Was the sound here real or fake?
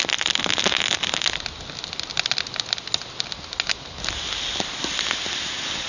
real